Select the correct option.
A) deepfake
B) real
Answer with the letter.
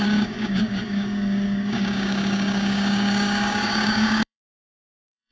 A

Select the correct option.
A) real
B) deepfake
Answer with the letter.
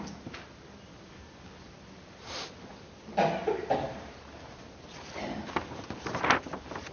A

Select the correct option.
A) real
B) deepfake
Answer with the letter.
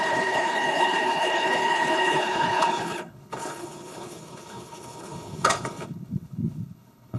B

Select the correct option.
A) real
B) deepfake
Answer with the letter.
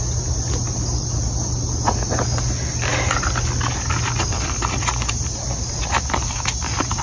A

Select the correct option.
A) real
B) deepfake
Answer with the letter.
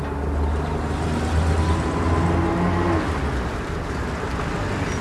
A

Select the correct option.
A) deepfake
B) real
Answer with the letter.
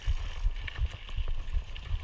B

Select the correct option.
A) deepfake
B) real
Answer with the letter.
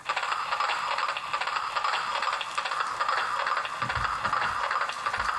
B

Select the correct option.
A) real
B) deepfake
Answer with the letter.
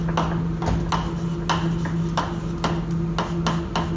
A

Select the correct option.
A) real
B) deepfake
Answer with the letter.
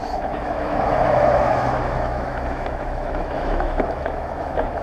B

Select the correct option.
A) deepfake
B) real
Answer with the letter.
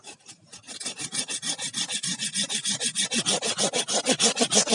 B